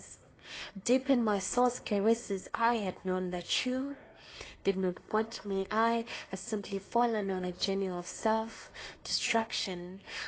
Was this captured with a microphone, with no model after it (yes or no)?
no